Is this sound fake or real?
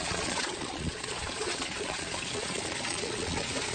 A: fake